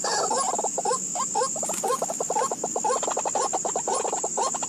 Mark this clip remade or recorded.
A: recorded